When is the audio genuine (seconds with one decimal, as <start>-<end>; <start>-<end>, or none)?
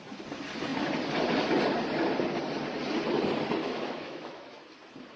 0.0-3.6; 4.6-5.2